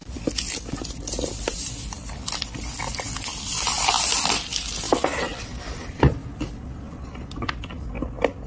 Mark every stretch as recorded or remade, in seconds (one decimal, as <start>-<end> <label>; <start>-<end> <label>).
0.0-2.0 recorded; 2.0-4.1 remade; 4.1-5.3 recorded; 5.3-7.5 remade; 7.5-8.5 recorded